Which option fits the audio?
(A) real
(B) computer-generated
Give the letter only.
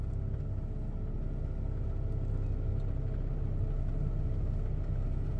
A